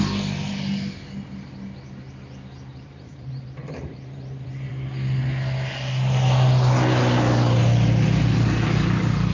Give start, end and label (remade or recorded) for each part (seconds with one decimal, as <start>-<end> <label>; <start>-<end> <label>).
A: 0.0-2.7 recorded; 2.7-4.7 remade; 4.7-9.3 recorded